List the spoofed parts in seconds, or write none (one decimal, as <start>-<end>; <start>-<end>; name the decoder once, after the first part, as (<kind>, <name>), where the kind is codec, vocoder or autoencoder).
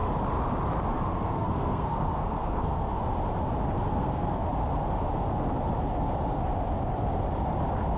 0.9-2.9 (codec, SNAC); 3.9-4.5